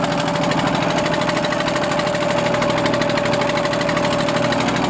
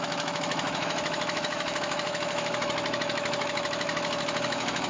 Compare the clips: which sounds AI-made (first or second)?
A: second